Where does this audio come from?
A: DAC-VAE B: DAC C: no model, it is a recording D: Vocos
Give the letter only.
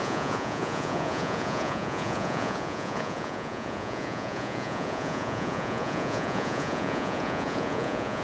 D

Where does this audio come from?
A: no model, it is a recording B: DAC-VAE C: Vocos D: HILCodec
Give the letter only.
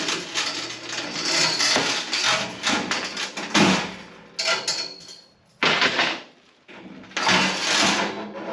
A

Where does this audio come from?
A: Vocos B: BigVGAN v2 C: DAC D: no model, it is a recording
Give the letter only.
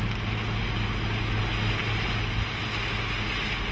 D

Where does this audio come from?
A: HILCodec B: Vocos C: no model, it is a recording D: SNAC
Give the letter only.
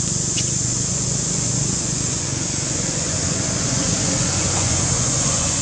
B